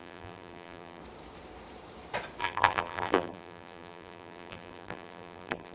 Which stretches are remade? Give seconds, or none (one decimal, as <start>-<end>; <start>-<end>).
0.0-1.0; 2.4-5.7